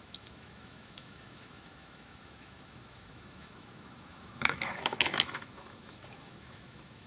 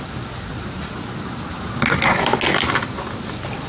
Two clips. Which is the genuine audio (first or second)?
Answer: second